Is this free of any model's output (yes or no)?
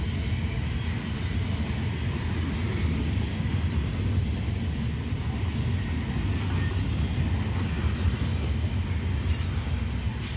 yes